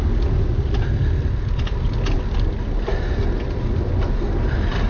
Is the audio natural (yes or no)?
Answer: yes